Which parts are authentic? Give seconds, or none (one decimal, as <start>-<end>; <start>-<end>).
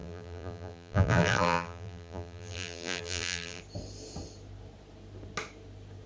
3.6-6.1